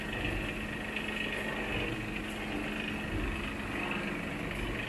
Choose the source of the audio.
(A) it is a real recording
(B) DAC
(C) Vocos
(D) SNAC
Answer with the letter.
A